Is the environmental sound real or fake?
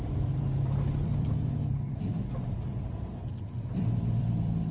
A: fake